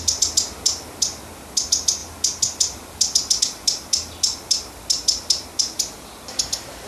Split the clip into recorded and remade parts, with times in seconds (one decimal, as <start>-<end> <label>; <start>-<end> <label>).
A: 0.0-6.9 recorded

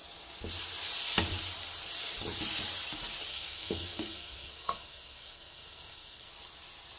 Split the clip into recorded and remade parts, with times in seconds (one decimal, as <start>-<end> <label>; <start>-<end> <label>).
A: 0.0-3.3 recorded; 3.3-6.3 remade; 6.3-7.0 recorded

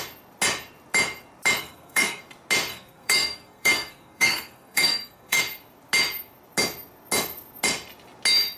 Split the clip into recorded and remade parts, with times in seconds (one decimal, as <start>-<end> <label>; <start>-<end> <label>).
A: 0.0-1.6 recorded; 1.6-2.2 remade; 2.2-2.7 recorded; 2.7-5.4 remade; 5.4-8.6 recorded

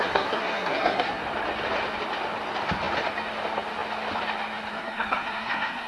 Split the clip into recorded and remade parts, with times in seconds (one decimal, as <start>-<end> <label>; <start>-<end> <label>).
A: 0.0-1.2 remade; 1.2-4.7 recorded; 4.7-5.9 remade